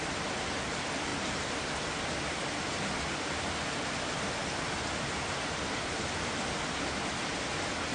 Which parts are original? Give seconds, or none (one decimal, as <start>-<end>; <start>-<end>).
0.0-1.1; 2.0-7.9